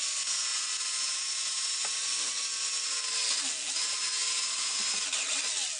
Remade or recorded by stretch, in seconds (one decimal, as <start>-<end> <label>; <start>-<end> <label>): 0.0-5.8 recorded